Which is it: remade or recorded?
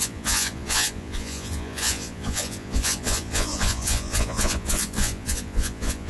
remade